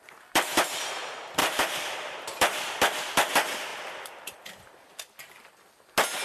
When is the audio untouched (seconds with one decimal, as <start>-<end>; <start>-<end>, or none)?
0.0-1.4; 2.4-3.7; 5.5-6.2